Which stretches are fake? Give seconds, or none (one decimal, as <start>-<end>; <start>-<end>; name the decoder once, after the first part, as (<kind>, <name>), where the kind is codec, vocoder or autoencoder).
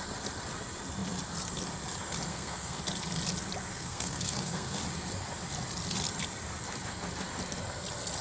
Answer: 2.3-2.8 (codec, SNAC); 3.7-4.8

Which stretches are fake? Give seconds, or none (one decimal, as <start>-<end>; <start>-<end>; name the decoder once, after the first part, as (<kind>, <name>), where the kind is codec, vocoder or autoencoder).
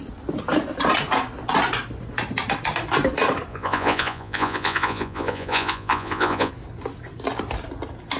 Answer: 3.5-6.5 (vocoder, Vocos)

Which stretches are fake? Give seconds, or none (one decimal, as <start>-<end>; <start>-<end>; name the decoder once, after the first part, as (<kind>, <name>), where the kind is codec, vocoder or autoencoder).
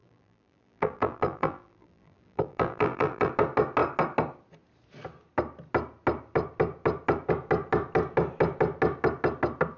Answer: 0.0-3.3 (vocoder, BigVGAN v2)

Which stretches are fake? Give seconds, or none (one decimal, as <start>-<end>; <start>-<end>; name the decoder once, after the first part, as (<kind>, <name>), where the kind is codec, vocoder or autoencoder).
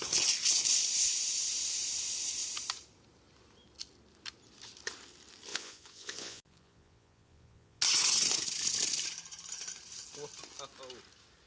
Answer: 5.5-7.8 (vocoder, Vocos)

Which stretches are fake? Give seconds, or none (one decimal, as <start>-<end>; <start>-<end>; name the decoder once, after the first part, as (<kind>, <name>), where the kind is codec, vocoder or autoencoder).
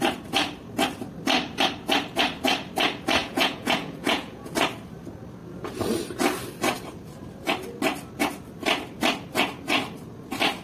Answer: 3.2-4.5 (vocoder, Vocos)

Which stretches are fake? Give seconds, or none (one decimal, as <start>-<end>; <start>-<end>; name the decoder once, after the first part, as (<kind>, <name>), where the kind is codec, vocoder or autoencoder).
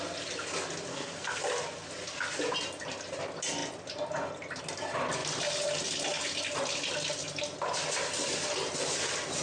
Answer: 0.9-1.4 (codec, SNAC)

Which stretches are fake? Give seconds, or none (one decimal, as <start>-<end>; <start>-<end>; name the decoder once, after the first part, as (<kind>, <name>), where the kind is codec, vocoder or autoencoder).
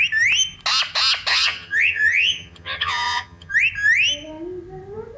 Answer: 1.3-3.5 (vocoder, HiFi-GAN)